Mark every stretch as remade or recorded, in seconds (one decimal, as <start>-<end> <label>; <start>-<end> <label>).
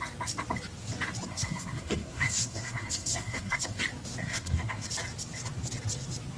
0.0-1.3 recorded; 1.3-3.8 remade; 3.8-4.2 recorded; 4.2-4.9 remade; 4.9-6.4 recorded